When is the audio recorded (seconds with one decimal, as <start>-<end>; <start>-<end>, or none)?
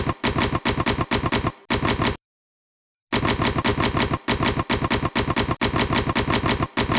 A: 0.0-7.0